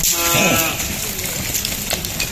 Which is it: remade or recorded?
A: recorded